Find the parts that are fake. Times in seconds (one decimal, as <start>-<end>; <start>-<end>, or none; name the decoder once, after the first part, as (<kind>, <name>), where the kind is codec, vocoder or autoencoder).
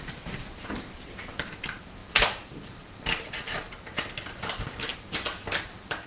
0.0-4.9 (vocoder, BigVGAN v2); 5.6-6.1